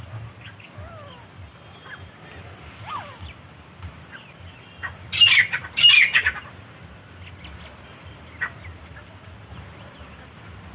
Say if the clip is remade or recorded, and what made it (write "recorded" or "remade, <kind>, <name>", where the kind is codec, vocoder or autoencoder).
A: recorded